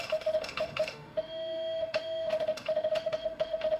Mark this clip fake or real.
fake